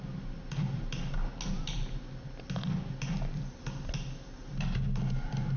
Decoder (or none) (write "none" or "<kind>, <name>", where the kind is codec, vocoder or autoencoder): none